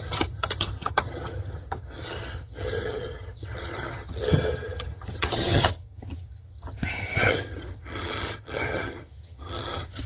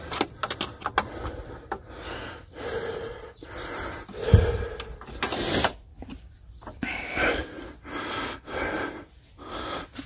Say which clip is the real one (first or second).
second